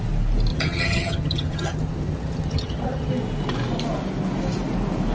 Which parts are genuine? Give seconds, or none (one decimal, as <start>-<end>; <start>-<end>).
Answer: 0.0-0.5; 3.1-5.1